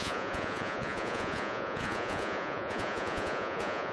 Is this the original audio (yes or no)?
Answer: no